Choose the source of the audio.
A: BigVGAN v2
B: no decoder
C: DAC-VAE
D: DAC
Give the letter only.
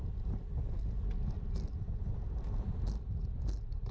B